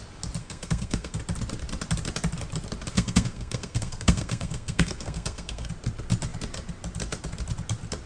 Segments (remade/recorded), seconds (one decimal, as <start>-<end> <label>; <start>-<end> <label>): 0.0-0.4 recorded; 0.4-1.2 remade; 1.2-2.9 recorded; 2.9-5.7 remade; 5.7-8.1 recorded